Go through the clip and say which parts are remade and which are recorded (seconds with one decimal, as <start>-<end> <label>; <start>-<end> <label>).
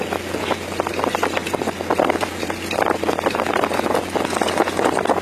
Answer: 0.0-5.2 recorded